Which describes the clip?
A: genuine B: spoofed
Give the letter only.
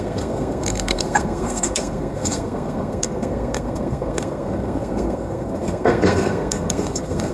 B